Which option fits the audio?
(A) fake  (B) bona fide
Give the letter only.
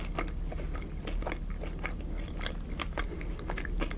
B